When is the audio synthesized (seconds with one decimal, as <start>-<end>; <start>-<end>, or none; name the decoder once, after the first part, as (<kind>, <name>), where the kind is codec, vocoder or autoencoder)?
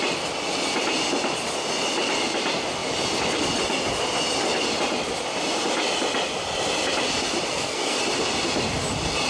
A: 7.5-8.0 (codec, SNAC)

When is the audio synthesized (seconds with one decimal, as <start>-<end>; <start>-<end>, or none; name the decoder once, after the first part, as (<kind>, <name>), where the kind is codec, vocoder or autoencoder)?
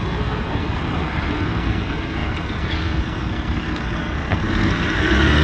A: 0.0-5.4 (codec, SNAC)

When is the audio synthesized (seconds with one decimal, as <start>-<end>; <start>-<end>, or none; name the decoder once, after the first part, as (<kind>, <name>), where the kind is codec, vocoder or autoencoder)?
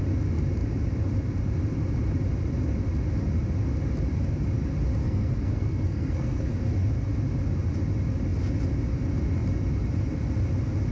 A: 5.0-6.6 (codec, SNAC)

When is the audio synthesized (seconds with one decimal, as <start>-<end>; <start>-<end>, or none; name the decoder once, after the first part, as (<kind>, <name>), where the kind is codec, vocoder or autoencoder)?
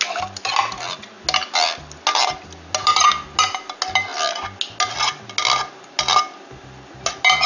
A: none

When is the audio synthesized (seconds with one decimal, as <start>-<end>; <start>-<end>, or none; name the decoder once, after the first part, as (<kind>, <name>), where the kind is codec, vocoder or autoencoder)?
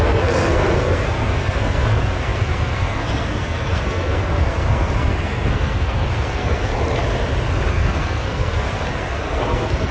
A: 0.0-6.7 (codec, SNAC); 7.7-9.9